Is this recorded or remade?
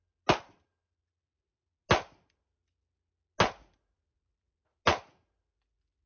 recorded